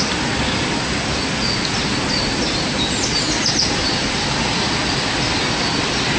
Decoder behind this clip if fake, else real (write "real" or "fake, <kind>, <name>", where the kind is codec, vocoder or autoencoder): real